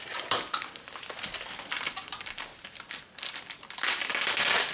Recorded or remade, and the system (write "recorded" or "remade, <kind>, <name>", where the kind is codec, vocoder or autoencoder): recorded